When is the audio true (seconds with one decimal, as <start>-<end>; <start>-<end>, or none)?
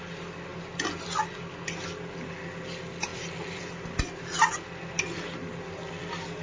0.0-6.4